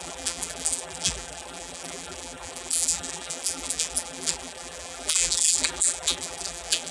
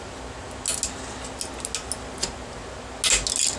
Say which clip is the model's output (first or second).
first